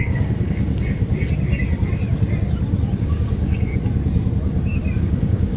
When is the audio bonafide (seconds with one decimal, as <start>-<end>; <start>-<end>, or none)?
1.0-3.0; 3.7-5.0